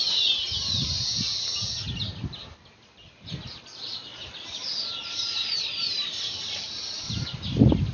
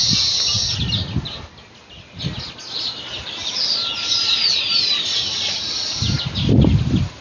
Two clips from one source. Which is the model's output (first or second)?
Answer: first